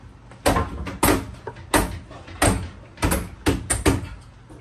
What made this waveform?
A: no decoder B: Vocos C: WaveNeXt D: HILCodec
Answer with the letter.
A